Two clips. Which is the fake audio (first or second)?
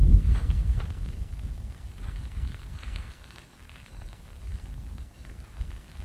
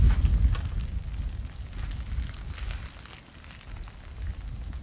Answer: first